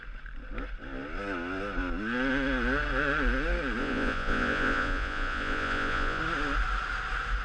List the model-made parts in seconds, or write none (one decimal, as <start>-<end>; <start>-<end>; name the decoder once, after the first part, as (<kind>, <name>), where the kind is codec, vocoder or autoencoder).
3.8-6.2 (vocoder, Vocos)